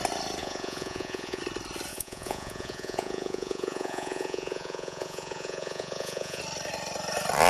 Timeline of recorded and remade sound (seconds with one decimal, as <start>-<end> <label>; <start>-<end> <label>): 0.0-0.4 recorded; 0.4-1.4 remade; 1.4-1.9 recorded; 1.9-6.4 remade; 6.4-7.5 recorded